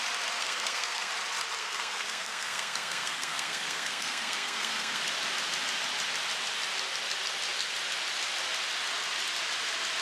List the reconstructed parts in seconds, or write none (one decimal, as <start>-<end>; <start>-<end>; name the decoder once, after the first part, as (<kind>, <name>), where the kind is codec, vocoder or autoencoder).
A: 0.4-1.1 (codec, SNAC); 1.6-5.0